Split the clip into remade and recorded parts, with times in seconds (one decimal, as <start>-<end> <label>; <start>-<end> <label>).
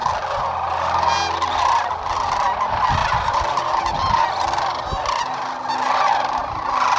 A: 0.0-7.0 recorded